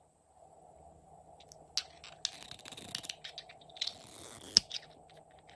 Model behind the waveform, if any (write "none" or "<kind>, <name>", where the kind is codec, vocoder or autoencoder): none